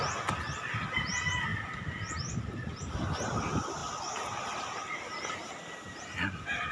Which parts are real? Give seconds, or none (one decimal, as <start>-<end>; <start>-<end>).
0.0-6.7